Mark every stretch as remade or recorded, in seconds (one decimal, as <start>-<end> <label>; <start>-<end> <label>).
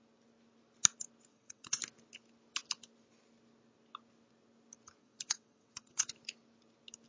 0.0-1.3 recorded; 1.3-1.8 remade; 1.8-5.0 recorded; 5.0-6.1 remade; 6.1-7.1 recorded